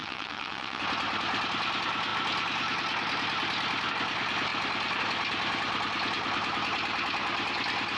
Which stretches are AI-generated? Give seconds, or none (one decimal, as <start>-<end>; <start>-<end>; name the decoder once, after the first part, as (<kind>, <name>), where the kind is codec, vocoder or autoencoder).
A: 0.0-0.8 (vocoder, WaveNeXt)